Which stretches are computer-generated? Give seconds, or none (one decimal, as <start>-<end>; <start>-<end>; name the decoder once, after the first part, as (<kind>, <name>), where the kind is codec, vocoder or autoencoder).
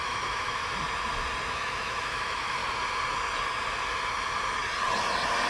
0.0-0.6 (autoencoder, DAC-VAE); 1.5-2.6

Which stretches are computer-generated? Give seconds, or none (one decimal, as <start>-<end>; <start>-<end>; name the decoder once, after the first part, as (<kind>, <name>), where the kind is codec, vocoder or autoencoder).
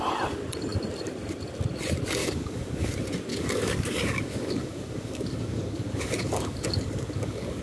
2.2-2.9 (codec, DAC); 3.3-7.6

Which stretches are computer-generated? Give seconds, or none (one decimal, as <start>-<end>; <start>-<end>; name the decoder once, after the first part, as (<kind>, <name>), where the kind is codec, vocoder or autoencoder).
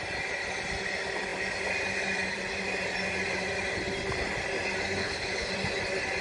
5.0-5.5 (codec, HILCodec)